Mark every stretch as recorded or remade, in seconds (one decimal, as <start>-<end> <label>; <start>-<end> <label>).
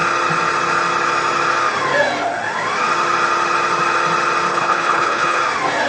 0.0-4.5 recorded; 4.5-5.4 remade; 5.4-5.9 recorded